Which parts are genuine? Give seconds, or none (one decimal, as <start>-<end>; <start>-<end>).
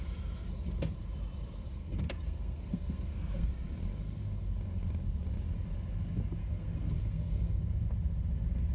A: 0.0-1.8; 3.5-6.4; 7.6-8.7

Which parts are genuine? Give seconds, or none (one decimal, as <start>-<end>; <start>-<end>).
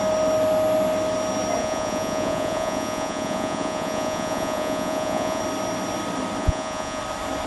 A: 0.0-1.6; 5.4-6.4; 7.0-7.5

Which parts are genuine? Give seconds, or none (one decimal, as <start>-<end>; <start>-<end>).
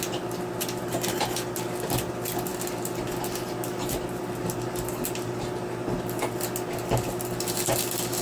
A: 0.0-8.2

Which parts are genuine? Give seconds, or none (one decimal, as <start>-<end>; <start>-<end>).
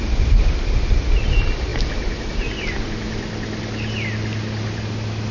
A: 0.0-5.3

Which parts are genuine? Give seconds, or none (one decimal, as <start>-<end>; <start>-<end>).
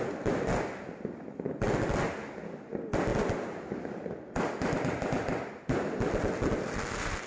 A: 0.0-7.3